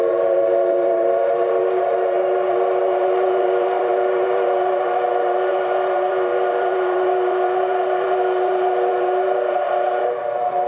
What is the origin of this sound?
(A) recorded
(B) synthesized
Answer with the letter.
B